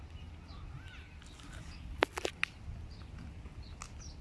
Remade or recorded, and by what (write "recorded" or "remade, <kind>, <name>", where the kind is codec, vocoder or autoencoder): recorded